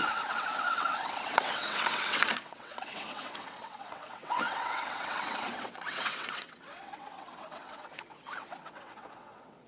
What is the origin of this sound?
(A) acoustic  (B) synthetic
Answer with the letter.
B